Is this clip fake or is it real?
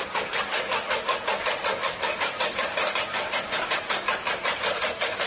real